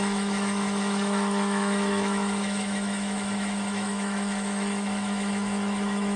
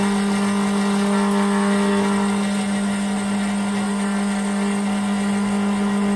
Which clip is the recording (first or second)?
second